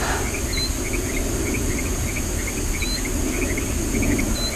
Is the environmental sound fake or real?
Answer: real